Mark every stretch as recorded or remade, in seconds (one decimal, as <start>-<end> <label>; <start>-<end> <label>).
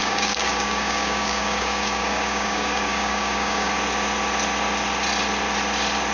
0.0-3.7 remade; 3.7-6.1 recorded